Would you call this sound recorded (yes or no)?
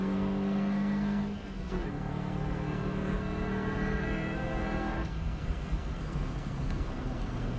no